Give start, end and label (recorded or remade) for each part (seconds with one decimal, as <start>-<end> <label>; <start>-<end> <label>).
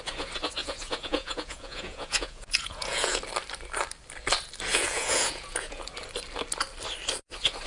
0.0-0.6 recorded; 0.6-3.2 remade; 3.2-4.7 recorded; 4.7-5.8 remade; 5.8-7.7 recorded